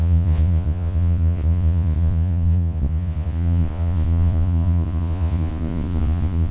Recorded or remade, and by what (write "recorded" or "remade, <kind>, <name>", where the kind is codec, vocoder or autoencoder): remade, vocoder, Vocos